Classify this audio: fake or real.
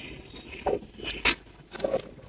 real